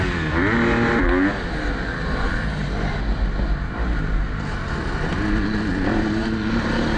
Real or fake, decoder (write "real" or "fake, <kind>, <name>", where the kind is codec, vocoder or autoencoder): real